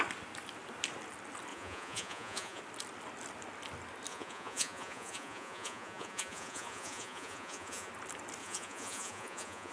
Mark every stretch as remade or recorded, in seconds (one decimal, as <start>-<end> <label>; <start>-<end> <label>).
0.0-1.5 recorded; 1.5-2.6 remade; 2.6-4.1 recorded; 4.1-7.9 remade; 7.9-8.4 recorded; 8.4-9.7 remade